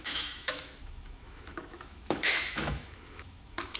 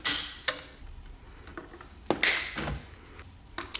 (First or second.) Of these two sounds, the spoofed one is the first